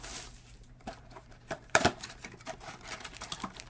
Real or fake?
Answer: fake